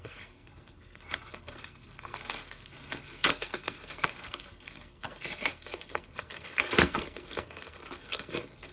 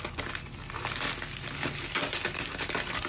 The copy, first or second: first